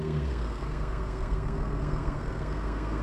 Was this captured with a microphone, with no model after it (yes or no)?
no